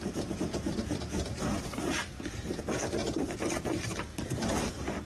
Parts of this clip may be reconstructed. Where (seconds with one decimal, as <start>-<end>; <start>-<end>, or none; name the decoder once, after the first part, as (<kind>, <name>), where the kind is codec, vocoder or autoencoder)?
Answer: 0.0-2.2 (vocoder, BigVGAN v2); 3.0-3.5; 4.1-5.0